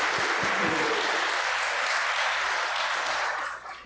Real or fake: real